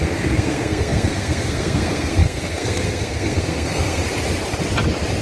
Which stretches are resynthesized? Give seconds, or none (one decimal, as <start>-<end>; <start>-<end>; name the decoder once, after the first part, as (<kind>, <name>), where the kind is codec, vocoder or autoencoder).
0.0-4.0 (codec, SNAC)